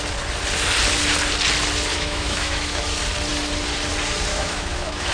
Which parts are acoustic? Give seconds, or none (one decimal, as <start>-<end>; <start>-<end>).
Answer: 0.0-1.9; 2.8-4.3